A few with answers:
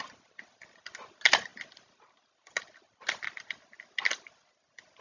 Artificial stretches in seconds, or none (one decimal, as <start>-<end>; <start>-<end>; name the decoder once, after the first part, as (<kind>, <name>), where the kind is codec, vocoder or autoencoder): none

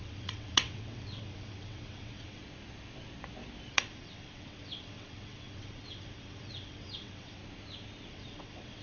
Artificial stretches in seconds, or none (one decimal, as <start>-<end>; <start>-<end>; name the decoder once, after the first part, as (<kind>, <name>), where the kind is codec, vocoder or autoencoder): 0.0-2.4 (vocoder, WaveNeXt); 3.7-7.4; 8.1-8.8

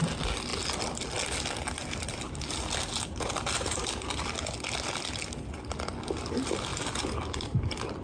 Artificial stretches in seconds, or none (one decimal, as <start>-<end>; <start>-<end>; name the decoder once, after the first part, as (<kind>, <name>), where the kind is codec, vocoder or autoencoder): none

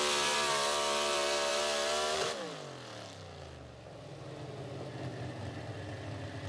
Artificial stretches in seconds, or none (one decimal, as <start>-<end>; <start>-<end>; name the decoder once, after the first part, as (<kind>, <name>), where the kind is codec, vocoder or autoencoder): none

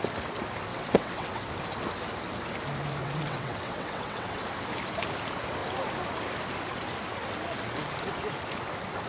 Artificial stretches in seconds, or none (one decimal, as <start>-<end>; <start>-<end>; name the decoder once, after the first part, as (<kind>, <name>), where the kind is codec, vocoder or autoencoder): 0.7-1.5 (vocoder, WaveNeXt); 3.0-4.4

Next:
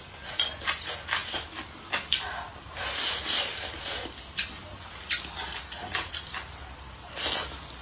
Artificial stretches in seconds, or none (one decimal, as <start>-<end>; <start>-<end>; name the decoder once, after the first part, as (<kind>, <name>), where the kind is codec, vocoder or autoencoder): none

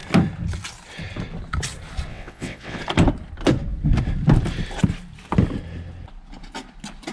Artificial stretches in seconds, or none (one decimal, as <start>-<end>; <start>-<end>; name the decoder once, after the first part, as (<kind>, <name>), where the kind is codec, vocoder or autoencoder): 2.1-2.8 (vocoder, WaveNeXt)